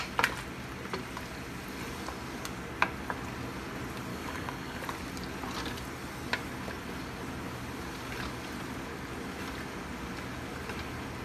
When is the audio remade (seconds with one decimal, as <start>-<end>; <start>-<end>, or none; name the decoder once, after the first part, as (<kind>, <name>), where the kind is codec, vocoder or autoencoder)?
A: 4.1-4.8 (codec, DAC)